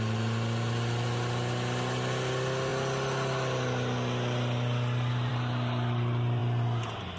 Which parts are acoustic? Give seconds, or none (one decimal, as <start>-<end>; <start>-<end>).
0.0-7.2